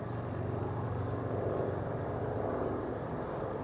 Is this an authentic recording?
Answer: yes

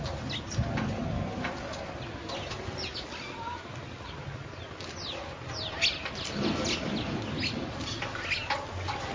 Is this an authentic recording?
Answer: yes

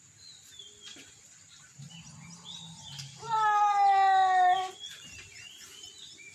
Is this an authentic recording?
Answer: yes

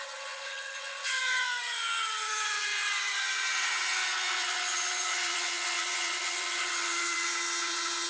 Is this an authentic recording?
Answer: no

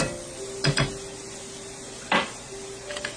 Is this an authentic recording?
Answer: yes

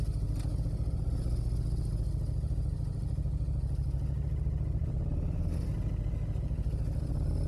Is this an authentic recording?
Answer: yes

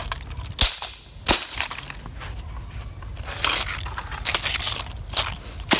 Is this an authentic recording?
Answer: yes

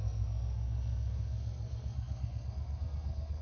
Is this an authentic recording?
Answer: no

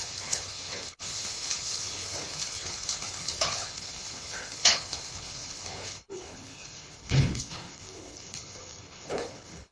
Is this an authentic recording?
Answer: no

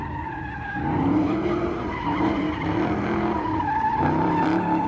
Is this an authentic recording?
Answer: no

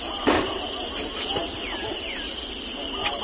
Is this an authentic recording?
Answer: yes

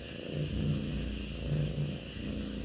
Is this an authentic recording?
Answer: yes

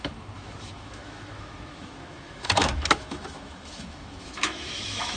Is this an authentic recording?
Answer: no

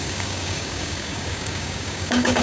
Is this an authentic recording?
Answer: no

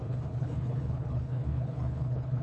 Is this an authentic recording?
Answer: no